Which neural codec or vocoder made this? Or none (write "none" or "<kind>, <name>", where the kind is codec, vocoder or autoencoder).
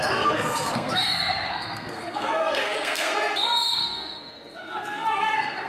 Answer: codec, SNAC